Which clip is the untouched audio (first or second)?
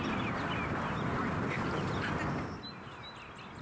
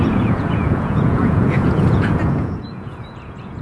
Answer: first